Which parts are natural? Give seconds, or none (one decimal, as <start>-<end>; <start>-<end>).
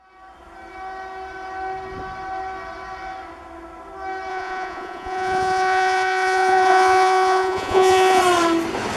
0.0-4.3; 8.2-9.0